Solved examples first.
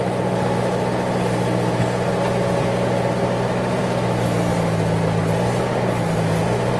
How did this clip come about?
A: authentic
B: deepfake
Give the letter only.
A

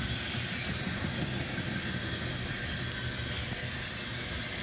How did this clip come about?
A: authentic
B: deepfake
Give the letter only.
A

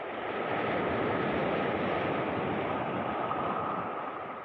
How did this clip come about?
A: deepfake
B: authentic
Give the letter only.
B